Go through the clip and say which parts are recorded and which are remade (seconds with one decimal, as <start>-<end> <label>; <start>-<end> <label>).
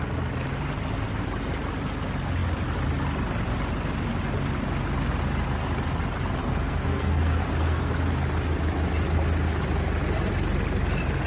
0.0-6.4 recorded; 6.4-7.9 remade; 7.9-11.3 recorded